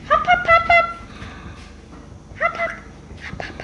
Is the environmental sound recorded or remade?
recorded